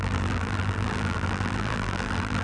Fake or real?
fake